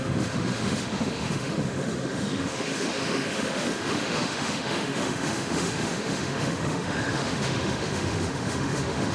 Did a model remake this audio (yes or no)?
yes